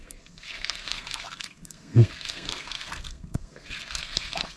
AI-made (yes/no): yes